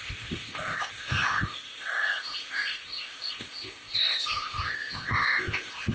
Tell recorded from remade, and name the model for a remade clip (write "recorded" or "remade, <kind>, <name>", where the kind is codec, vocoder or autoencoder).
remade, codec, ZipCodec